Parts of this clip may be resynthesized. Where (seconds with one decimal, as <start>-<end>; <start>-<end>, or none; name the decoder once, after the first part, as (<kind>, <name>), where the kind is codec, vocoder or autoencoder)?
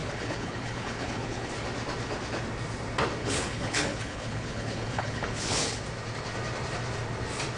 0.0-1.5 (codec, HILCodec); 3.2-5.8